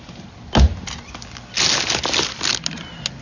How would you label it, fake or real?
real